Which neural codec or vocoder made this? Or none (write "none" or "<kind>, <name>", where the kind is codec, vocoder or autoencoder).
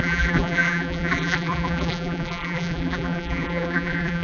vocoder, BigVGAN v2